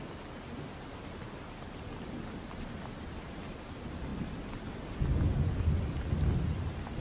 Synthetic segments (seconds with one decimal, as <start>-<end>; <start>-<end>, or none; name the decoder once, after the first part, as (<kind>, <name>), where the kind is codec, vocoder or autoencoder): none